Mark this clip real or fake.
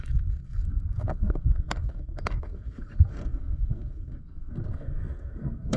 fake